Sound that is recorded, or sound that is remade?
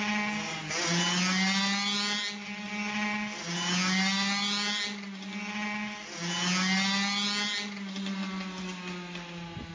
recorded